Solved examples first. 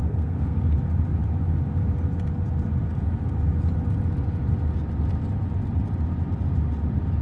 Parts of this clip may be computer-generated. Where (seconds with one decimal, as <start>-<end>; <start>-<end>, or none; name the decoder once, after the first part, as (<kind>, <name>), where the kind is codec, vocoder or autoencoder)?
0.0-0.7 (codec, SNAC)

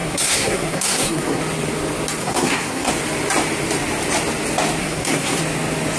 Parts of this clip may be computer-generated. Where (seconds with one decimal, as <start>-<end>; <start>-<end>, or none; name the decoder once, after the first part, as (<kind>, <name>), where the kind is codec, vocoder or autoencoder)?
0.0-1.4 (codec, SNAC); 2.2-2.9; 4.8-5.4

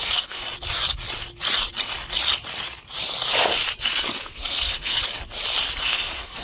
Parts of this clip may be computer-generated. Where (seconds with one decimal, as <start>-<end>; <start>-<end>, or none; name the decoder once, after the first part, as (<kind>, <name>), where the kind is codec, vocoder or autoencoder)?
0.0-0.4 (codec, SNAC); 4.2-5.0; 5.9-6.4